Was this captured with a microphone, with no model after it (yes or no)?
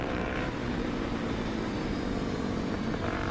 no